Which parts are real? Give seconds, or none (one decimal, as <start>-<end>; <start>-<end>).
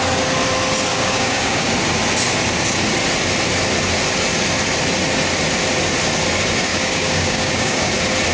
0.0-0.9; 1.7-6.7; 7.9-8.3